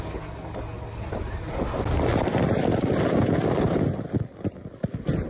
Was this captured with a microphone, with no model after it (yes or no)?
yes